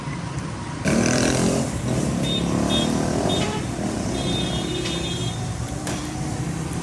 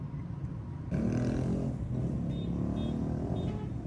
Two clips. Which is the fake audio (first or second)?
first